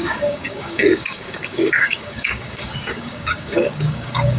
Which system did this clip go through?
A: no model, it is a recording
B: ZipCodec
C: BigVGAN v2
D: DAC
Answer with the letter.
D